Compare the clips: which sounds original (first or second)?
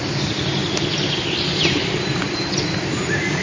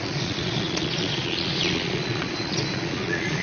first